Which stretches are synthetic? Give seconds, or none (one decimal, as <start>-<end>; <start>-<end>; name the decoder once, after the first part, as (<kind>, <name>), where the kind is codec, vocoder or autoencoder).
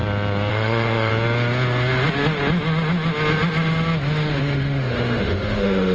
0.5-1.1 (autoencoder, DAC-VAE); 4.4-5.9